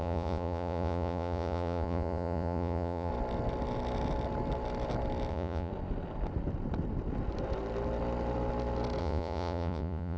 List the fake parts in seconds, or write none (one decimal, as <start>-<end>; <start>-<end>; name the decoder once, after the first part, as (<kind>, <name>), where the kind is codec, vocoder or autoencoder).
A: 0.0-3.1 (vocoder, Vocos); 5.3-5.7; 9.0-10.2